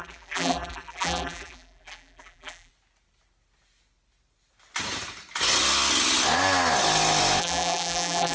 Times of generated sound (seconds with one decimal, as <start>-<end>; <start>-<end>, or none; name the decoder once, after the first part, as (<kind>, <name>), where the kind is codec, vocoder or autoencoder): 0.0-2.7 (vocoder, BigVGAN v2); 7.4-8.3